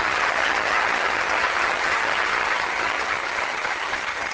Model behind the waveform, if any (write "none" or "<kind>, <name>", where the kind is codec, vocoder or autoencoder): vocoder, HiFi-GAN